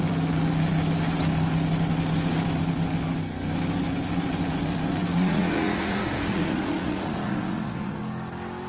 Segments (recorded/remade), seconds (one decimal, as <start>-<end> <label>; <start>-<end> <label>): 0.0-5.1 recorded; 5.1-8.0 remade; 8.0-8.7 recorded